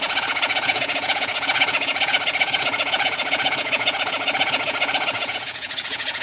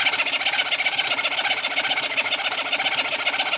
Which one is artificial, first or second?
first